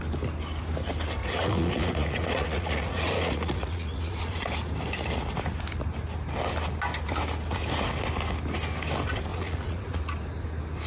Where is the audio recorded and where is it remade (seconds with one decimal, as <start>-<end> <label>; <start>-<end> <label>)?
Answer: 0.0-1.2 recorded; 1.2-4.5 remade; 4.5-9.3 recorded; 9.3-10.0 remade; 10.0-10.9 recorded